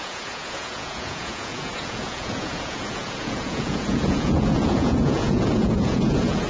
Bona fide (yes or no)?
no